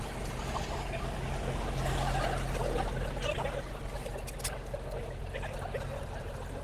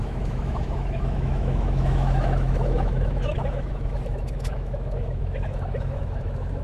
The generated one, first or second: second